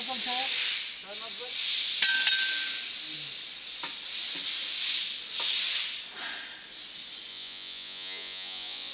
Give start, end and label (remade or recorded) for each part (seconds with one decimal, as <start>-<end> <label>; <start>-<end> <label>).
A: 0.0-7.3 recorded; 7.3-8.9 remade